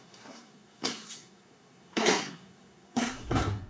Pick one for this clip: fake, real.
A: fake